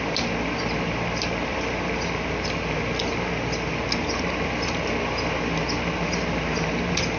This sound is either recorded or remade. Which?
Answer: recorded